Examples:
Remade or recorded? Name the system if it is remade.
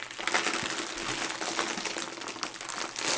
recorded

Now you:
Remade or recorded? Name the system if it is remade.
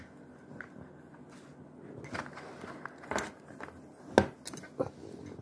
recorded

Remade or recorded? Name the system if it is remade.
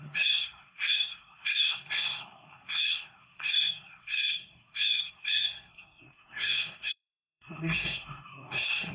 remade, codec, SNAC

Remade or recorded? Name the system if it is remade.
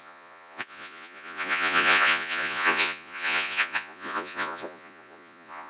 remade, vocoder, Vocos